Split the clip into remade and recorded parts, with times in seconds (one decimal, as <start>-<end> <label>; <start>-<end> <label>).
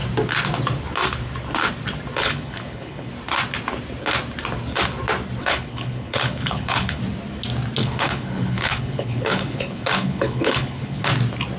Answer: 0.0-2.2 recorded; 2.2-3.1 remade; 3.1-5.4 recorded; 5.4-7.0 remade; 7.0-7.8 recorded; 7.8-11.0 remade; 11.0-11.6 recorded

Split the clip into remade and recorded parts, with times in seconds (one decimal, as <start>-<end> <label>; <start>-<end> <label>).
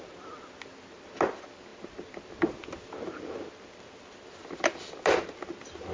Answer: 0.0-5.9 recorded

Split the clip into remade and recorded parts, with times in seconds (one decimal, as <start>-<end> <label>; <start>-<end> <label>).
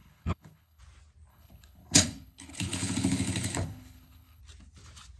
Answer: 0.0-0.8 remade; 0.8-1.3 recorded; 1.3-4.4 remade; 4.4-5.2 recorded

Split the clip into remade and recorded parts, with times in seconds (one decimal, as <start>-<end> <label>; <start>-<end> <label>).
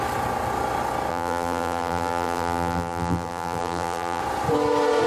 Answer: 0.0-1.1 recorded; 1.1-4.2 remade; 4.2-5.1 recorded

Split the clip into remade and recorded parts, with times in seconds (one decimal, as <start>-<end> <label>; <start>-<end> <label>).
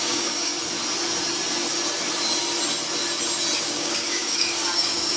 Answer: 0.0-0.5 remade; 0.5-3.6 recorded; 3.6-5.2 remade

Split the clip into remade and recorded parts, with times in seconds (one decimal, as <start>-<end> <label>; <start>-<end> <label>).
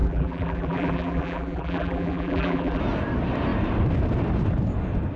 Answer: 0.0-2.8 remade; 2.8-5.2 recorded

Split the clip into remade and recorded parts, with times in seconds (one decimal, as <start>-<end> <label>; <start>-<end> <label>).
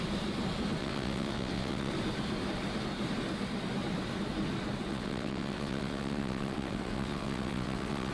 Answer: 0.0-0.8 recorded; 0.8-1.9 remade; 1.9-4.9 recorded; 4.9-8.1 remade